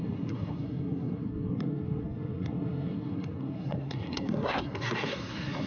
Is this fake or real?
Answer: fake